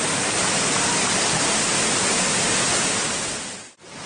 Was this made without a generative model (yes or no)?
yes